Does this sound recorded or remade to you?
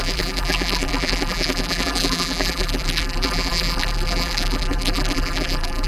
remade